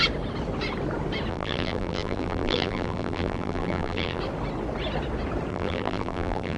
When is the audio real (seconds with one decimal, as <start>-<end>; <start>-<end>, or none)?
0.0-1.3; 4.2-5.5